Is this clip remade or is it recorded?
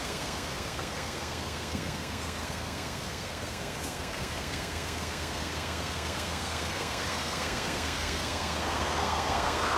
remade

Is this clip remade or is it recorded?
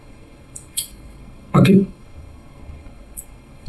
remade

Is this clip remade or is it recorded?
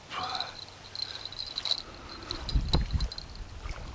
recorded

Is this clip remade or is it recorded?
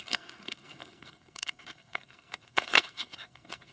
remade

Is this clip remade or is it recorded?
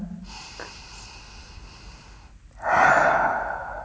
recorded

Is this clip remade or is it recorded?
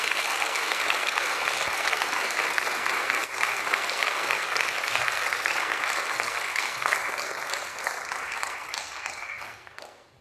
remade